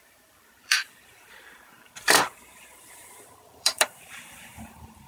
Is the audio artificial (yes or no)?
yes